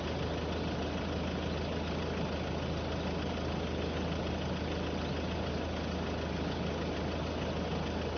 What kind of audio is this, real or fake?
real